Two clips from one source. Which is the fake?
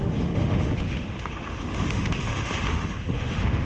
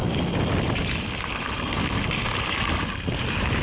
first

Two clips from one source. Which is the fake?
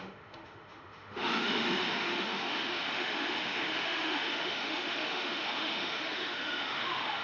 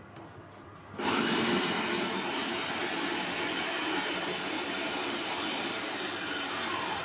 first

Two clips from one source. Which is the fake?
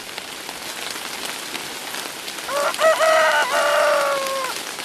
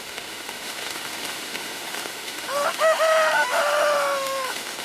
second